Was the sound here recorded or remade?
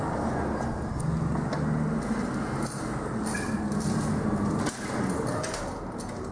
recorded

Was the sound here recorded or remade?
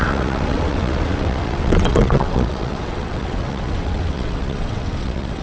remade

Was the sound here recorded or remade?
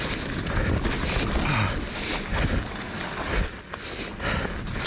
recorded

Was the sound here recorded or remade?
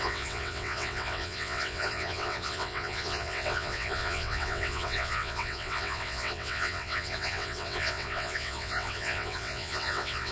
remade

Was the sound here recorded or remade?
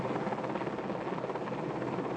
recorded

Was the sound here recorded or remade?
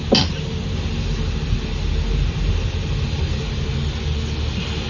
recorded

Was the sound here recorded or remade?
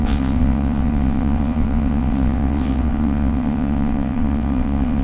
remade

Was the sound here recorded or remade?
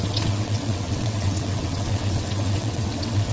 remade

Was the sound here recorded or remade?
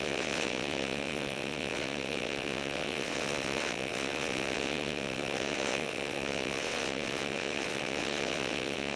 remade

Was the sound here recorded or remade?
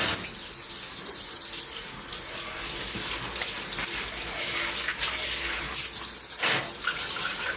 recorded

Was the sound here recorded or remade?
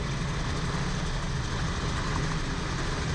recorded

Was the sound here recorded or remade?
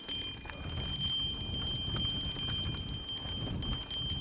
recorded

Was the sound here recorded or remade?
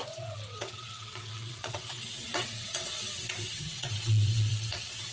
remade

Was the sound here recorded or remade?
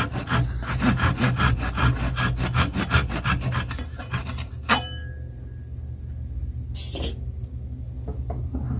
recorded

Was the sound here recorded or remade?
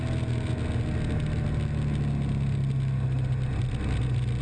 recorded